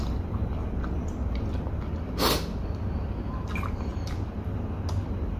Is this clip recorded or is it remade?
recorded